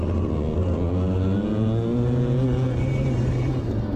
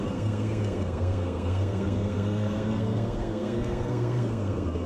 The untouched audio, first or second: first